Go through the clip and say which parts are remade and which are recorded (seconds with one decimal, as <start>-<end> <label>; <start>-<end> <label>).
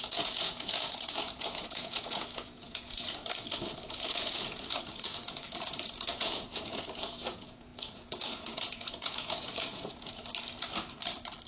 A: 0.0-3.2 remade; 3.2-3.7 recorded; 3.7-10.2 remade; 10.2-11.5 recorded